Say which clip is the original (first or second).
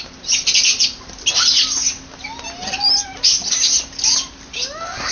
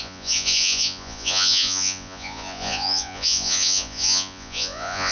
first